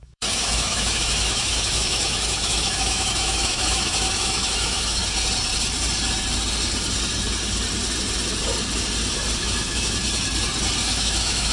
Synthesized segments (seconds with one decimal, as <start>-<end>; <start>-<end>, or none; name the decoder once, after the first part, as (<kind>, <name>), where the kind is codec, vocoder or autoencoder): 0.0-5.0 (autoencoder, DAC-VAE); 9.4-10.0; 10.9-11.5